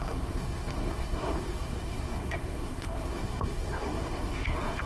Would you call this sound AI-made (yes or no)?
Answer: yes